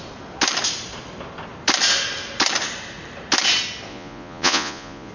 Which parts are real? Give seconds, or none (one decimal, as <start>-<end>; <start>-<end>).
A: 0.0-3.9